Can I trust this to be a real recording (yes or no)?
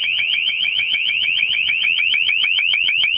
no